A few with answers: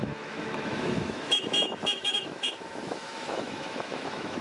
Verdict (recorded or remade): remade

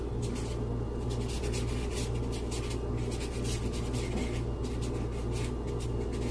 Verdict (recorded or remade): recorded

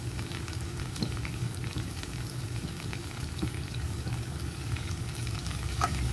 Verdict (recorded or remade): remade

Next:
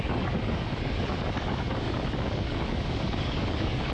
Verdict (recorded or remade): remade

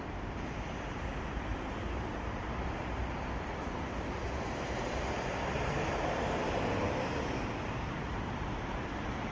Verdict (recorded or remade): remade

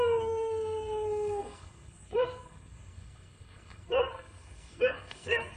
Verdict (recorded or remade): remade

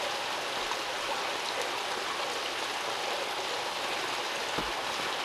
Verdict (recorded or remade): recorded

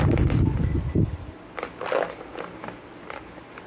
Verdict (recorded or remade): recorded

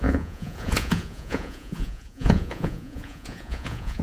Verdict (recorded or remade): remade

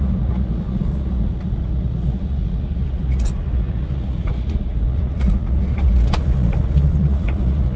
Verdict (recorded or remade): remade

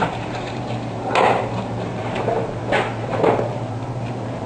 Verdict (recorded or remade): remade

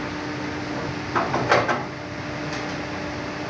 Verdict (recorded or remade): recorded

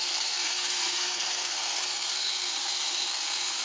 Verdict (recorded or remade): remade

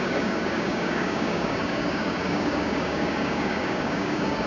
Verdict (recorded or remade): remade